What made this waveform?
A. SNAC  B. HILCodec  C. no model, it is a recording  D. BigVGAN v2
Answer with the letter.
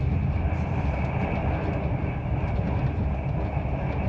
C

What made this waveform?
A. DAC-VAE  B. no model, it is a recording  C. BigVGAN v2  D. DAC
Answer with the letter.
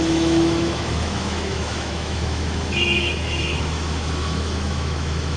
A